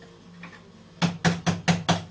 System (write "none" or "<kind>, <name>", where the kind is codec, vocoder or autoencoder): none